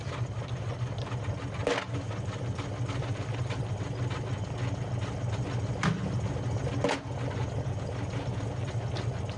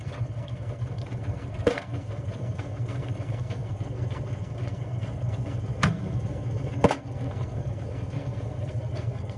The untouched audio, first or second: first